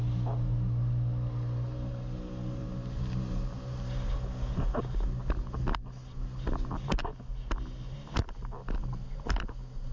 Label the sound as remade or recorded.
recorded